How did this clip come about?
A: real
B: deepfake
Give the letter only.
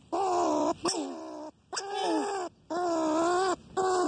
A